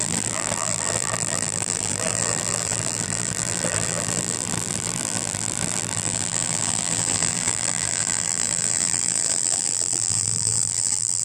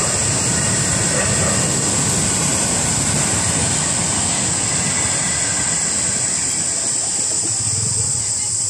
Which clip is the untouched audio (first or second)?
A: second